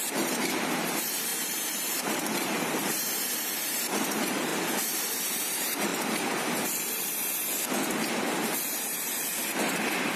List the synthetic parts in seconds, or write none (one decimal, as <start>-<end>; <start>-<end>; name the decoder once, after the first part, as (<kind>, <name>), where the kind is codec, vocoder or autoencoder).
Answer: 0.0-4.5 (vocoder, BigVGAN v2); 5.5-5.9; 8.8-9.3